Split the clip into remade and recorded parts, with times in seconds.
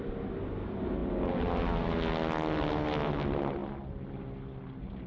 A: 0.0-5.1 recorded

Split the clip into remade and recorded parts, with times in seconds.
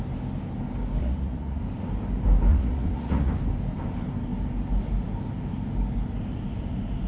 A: 0.0-1.0 recorded; 1.0-1.6 remade; 1.6-2.5 recorded; 2.5-3.3 remade; 3.3-7.1 recorded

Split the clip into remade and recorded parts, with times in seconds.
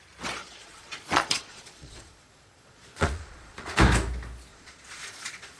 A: 0.0-0.4 recorded; 0.4-3.8 remade; 3.8-4.5 recorded; 4.5-5.6 remade